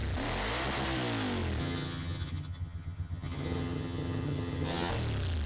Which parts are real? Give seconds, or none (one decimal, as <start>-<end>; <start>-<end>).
0.0-1.6; 4.9-5.5